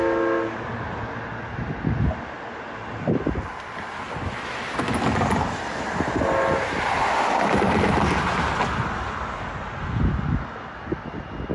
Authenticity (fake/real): real